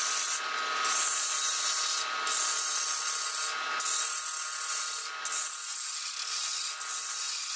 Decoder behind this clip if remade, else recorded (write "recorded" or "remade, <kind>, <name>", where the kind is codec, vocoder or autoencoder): recorded